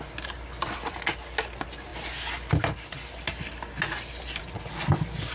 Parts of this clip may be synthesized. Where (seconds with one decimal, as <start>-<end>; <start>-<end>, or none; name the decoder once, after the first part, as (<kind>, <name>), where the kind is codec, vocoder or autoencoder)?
none